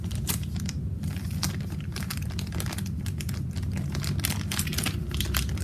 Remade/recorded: recorded